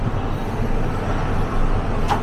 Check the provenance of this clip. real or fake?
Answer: real